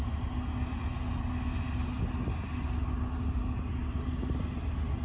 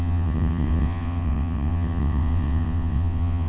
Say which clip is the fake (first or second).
second